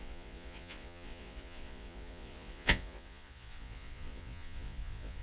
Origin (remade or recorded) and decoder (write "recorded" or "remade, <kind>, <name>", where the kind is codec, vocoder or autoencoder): remade, vocoder, Vocos